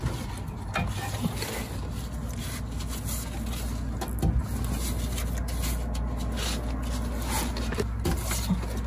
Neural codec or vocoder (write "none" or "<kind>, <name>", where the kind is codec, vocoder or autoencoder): none